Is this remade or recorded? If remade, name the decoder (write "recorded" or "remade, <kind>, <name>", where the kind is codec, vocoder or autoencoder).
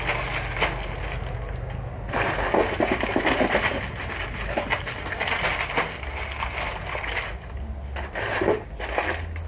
recorded